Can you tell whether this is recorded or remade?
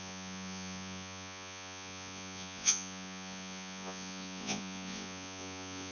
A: remade